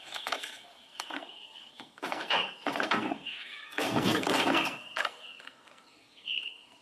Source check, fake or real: fake